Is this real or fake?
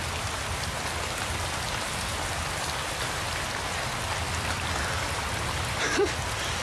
real